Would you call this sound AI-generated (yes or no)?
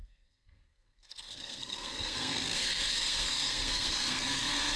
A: yes